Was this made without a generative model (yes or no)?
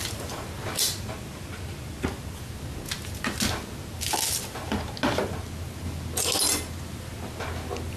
yes